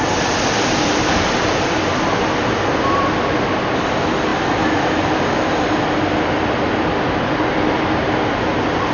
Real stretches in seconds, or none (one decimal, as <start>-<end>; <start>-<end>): 0.0-8.9